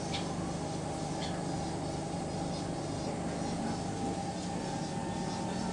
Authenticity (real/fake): real